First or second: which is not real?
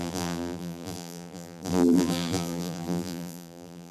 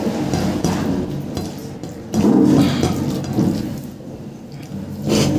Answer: first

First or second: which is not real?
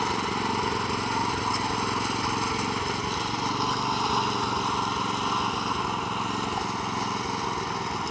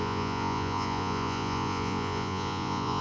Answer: second